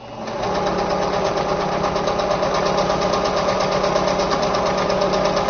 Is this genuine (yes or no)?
yes